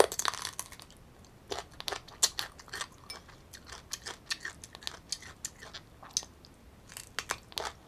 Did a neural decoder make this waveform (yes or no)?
no